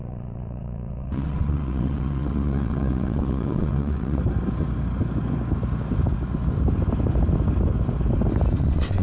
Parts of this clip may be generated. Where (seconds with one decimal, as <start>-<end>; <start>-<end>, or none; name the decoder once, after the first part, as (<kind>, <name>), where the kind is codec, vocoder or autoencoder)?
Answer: 0.0-4.2 (vocoder, WaveNeXt); 8.6-9.0